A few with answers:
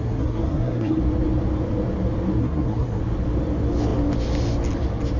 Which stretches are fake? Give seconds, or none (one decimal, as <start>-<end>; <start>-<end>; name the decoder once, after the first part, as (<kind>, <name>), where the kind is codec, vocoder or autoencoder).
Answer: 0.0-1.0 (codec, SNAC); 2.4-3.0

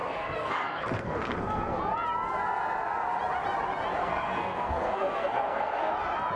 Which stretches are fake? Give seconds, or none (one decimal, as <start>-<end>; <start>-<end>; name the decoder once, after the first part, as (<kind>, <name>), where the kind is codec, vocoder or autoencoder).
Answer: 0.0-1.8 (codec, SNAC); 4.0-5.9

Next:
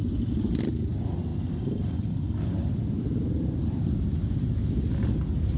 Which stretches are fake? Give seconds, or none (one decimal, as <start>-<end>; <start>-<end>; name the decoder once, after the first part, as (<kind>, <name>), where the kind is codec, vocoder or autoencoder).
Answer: none

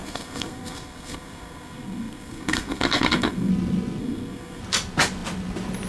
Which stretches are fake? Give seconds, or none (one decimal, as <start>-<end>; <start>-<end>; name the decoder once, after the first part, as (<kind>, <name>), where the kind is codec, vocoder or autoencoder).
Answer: 0.0-3.5 (codec, SNAC); 4.0-4.6

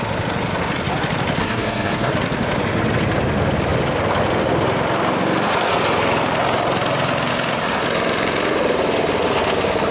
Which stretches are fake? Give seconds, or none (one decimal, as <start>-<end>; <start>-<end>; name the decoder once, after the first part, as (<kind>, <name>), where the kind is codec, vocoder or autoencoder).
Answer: 1.4-2.1 (codec, SNAC)

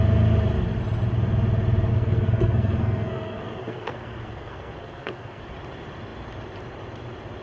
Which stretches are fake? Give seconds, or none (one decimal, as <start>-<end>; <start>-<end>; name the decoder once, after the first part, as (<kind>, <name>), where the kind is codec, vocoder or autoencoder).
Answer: 1.9-5.4 (codec, SNAC)

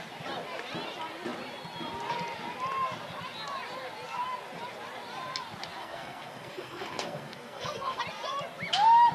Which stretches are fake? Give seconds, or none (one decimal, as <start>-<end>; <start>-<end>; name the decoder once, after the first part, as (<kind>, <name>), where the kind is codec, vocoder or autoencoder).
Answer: 5.8-8.0 (codec, SNAC)

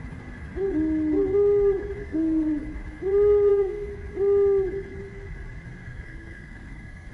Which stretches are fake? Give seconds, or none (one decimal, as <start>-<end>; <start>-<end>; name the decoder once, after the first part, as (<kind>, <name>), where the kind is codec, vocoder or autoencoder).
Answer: 2.0-2.5 (codec, SNAC); 3.5-4.1; 5.8-7.1